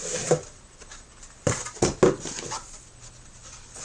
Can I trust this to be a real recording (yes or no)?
yes